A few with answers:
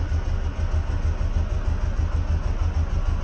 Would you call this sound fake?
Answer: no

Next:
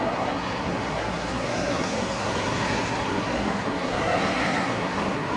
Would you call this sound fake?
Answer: yes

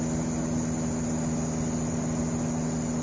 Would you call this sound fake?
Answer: no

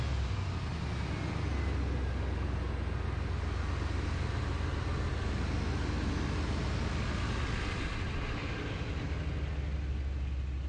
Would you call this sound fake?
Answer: no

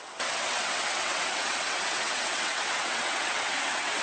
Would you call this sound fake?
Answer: yes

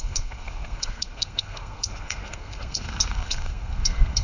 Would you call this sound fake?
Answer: yes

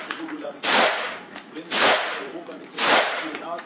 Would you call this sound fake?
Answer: yes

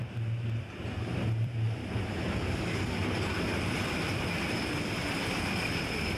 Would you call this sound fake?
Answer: yes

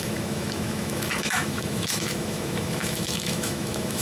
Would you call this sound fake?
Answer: yes